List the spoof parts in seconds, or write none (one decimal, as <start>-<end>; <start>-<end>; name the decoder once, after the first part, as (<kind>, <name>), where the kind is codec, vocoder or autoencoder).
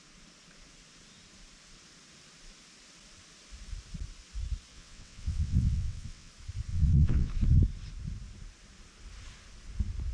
4.7-6.3 (vocoder, WaveNeXt); 6.7-7.3